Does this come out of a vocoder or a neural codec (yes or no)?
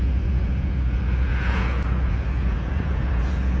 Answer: yes